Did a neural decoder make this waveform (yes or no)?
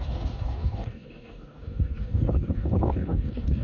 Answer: yes